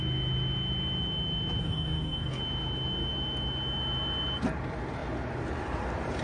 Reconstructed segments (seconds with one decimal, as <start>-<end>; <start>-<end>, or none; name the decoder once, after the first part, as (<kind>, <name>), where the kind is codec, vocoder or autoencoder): 1.6-2.4 (codec, DAC)